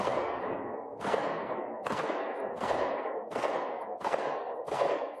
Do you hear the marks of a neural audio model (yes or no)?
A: yes